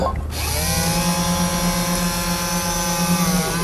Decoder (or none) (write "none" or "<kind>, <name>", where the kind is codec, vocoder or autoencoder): none